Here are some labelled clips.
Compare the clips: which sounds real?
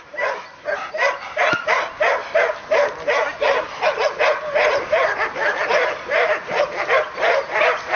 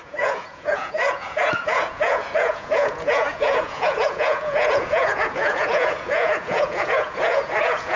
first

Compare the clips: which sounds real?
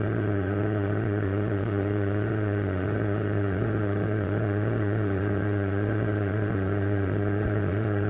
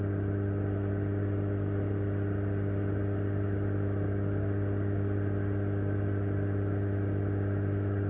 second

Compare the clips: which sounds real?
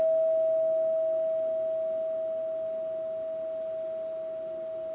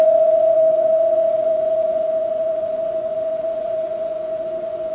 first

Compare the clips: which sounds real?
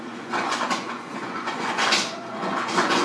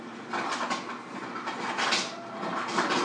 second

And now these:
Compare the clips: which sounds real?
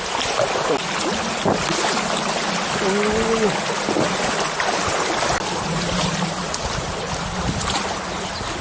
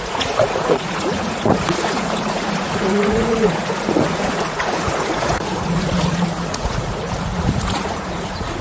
first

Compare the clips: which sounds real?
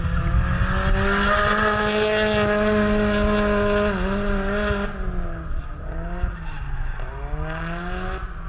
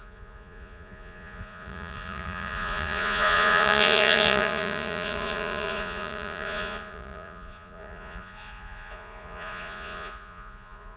first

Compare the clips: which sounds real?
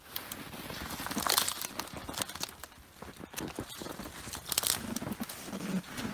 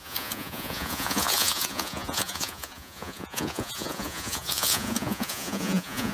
first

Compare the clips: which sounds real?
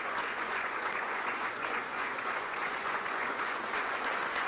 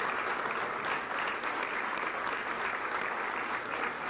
second